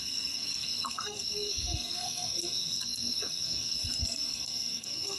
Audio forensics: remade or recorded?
remade